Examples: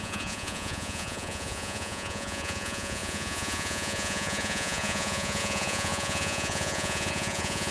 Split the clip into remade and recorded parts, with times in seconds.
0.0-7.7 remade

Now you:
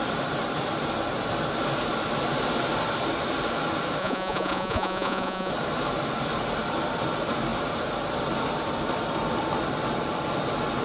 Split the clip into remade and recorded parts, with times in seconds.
0.0-4.0 recorded; 4.0-5.5 remade; 5.5-10.8 recorded

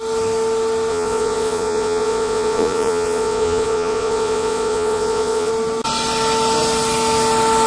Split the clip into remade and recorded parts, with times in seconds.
0.0-0.9 recorded; 0.9-5.5 remade; 5.5-7.7 recorded

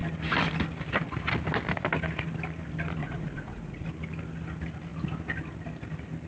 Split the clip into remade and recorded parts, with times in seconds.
0.0-3.0 recorded; 3.0-3.9 remade; 3.9-6.3 recorded

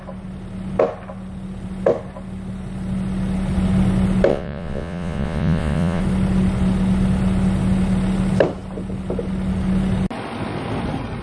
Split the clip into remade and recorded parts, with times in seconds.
0.0-4.3 recorded; 4.3-6.0 remade; 6.0-11.2 recorded

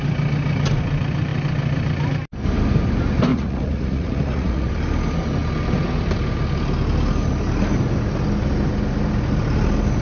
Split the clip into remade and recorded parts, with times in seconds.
0.0-3.3 recorded; 3.3-4.7 remade; 4.7-10.0 recorded

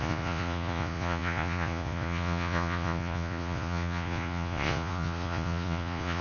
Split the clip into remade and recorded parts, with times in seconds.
0.0-6.2 remade